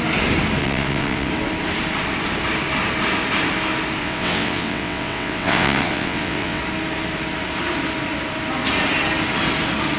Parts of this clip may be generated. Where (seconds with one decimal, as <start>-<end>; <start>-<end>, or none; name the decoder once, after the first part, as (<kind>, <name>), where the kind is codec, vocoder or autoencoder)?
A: 0.6-1.3 (vocoder, WaveNeXt); 4.0-6.6